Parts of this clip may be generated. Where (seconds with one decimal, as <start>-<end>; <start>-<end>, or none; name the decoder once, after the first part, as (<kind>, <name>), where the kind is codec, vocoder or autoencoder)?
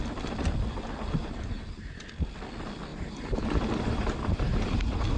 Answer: 1.2-2.1 (vocoder, BigVGAN v2); 2.9-5.2